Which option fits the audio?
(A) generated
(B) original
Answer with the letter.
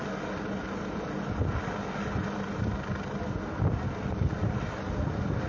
B